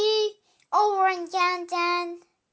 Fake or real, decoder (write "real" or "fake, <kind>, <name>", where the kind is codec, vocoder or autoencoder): real